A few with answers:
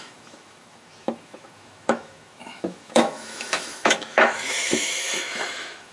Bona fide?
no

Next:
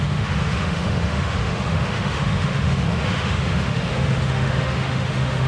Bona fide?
no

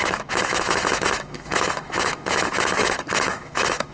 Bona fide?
no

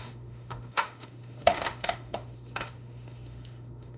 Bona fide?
no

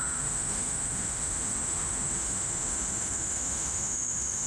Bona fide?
no